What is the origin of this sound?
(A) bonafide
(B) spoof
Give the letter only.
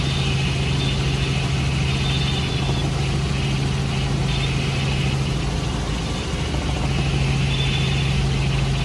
A